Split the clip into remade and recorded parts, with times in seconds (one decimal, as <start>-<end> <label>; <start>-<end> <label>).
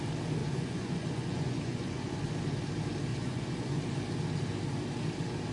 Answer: 0.0-0.4 recorded; 0.4-2.1 remade; 2.1-3.1 recorded; 3.1-3.8 remade; 3.8-5.5 recorded